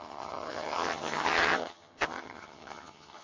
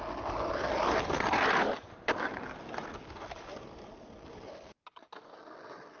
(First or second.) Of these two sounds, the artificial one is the first